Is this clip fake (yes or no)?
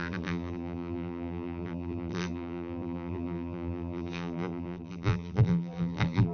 yes